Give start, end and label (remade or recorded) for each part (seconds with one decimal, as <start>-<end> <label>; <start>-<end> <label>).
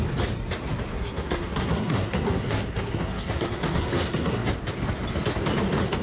0.0-0.9 recorded; 0.9-4.5 remade; 4.5-6.0 recorded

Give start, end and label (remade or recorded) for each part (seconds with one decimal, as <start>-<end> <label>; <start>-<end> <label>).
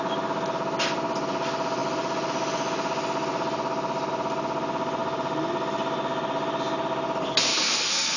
0.0-7.5 recorded; 7.5-8.2 remade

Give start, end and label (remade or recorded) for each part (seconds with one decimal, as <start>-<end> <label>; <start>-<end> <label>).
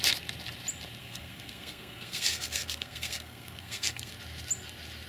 0.0-1.0 recorded; 1.0-4.1 remade; 4.1-5.1 recorded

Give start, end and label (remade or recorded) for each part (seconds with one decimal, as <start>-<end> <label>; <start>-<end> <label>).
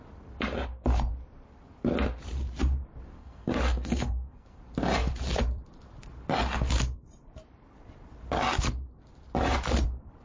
0.0-3.2 recorded; 3.2-4.6 remade; 4.6-10.2 recorded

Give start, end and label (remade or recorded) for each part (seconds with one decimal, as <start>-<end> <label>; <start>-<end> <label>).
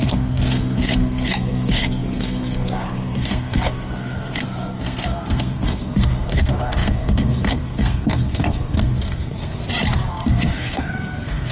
0.0-9.6 remade; 9.6-10.1 recorded; 10.1-11.5 remade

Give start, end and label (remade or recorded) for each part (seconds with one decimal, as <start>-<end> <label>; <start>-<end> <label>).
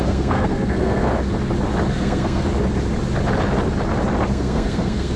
0.0-1.1 remade; 1.1-1.9 recorded; 1.9-2.4 remade; 2.4-4.3 recorded; 4.3-5.2 remade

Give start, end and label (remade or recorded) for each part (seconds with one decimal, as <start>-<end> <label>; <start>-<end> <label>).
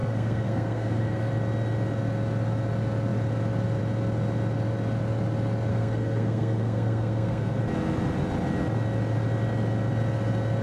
0.0-1.3 remade; 1.3-5.7 recorded; 5.7-7.6 remade; 7.6-10.6 recorded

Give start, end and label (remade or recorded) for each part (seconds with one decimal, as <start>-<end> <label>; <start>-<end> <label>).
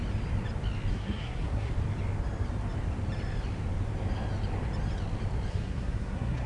0.0-0.9 recorded; 0.9-1.7 remade; 1.7-5.5 recorded; 5.5-6.5 remade